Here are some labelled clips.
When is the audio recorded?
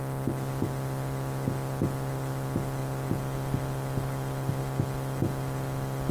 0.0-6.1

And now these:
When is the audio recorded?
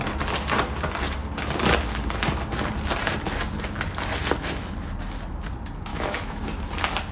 0.0-5.9; 6.4-7.1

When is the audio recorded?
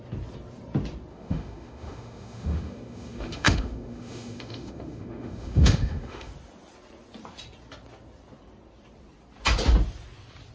0.0-1.1; 6.3-10.5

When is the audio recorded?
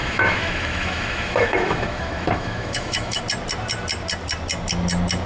3.2-5.3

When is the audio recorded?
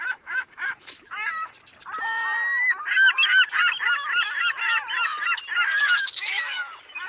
1.7-5.8